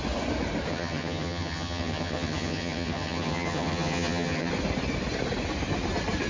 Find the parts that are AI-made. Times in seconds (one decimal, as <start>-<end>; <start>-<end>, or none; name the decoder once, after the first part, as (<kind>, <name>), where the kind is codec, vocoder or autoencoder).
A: 0.7-4.5 (vocoder, HiFi-GAN)